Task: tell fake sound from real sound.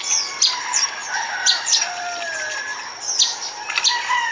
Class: real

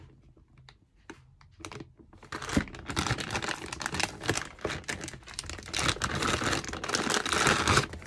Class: real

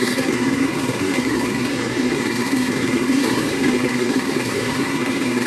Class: fake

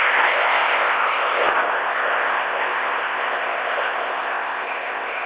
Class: fake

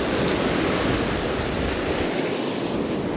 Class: real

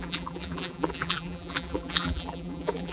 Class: fake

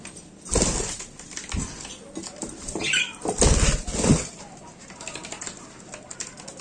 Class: real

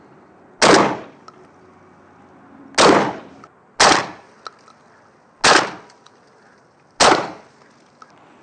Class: real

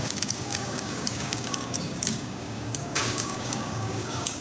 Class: fake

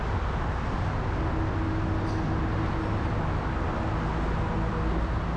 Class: real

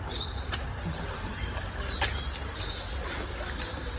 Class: real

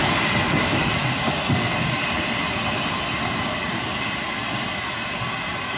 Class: real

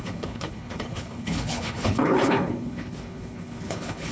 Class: fake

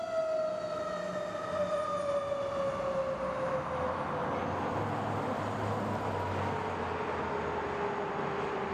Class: real